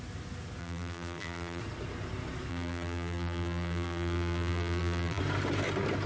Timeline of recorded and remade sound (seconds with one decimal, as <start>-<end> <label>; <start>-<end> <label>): 0.0-0.6 recorded; 0.6-1.6 remade; 1.6-2.5 recorded; 2.5-5.2 remade; 5.2-6.1 recorded

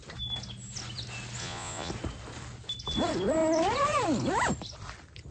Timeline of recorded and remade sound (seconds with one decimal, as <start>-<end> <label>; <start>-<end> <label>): 0.0-1.4 recorded; 1.4-1.9 remade; 1.9-5.3 recorded